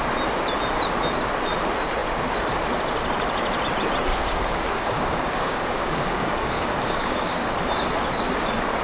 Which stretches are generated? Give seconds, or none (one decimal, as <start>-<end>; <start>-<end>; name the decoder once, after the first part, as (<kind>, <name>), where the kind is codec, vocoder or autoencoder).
4.1-7.5 (codec, DAC)